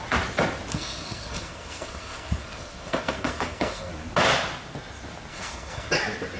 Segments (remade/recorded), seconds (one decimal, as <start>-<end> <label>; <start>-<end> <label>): 0.0-0.7 recorded; 0.7-3.9 remade; 3.9-5.3 recorded; 5.3-5.9 remade; 5.9-6.4 recorded